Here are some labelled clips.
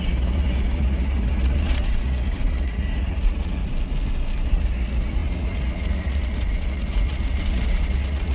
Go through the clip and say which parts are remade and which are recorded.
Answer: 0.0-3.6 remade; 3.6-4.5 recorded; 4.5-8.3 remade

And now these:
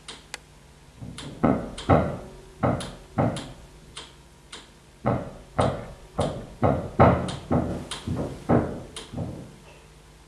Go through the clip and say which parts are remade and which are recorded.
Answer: 0.0-0.5 recorded; 0.5-2.5 remade; 2.5-3.5 recorded; 3.5-6.9 remade; 6.9-10.3 recorded